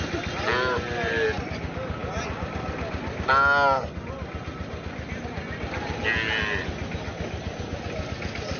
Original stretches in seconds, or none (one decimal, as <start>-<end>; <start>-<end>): 0.0-8.6